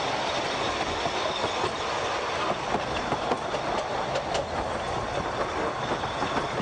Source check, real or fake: real